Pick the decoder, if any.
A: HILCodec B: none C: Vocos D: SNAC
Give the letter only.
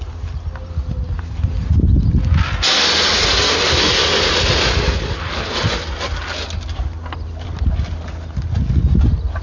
B